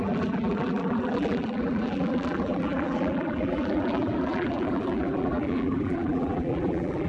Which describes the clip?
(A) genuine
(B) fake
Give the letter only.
B